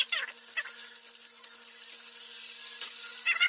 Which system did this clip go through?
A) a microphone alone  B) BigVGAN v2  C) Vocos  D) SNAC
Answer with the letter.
A